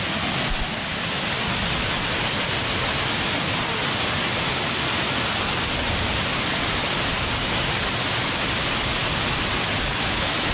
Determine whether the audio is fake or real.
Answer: real